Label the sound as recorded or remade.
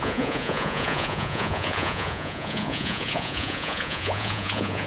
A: remade